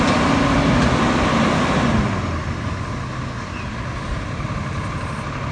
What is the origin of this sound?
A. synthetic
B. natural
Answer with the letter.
B